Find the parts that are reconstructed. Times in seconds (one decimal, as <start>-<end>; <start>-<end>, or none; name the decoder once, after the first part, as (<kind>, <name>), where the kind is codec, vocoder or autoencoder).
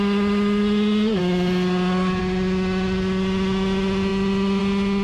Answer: none